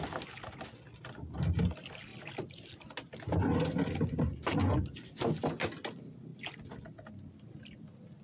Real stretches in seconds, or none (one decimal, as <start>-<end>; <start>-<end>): 0.0-8.2